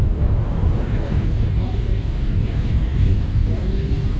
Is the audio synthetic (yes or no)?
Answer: yes